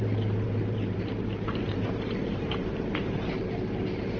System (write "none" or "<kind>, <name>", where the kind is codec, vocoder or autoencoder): vocoder, BigVGAN v2